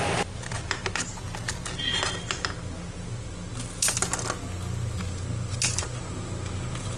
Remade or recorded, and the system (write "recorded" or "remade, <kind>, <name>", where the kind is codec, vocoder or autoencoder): recorded